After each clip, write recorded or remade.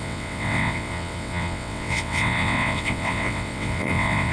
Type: remade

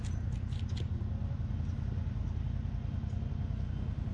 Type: recorded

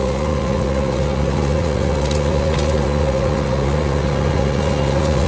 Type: remade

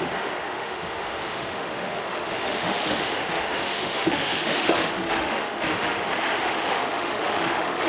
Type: remade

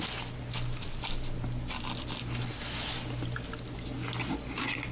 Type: recorded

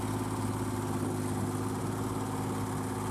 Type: recorded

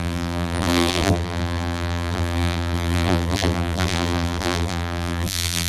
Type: remade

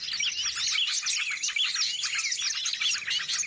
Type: recorded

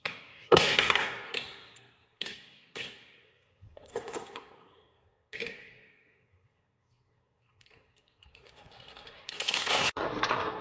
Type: remade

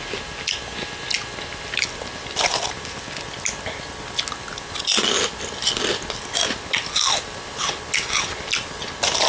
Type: recorded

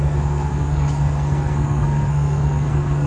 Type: remade